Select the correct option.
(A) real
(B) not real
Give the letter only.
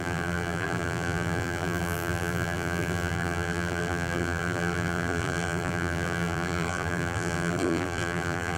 B